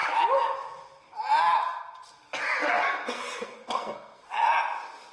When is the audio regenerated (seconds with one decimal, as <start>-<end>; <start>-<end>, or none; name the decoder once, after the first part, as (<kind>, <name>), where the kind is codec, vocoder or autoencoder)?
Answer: 2.6-4.3 (codec, SNAC)